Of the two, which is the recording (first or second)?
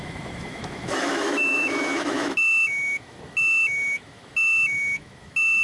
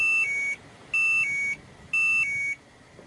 second